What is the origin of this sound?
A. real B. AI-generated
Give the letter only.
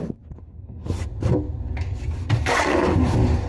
A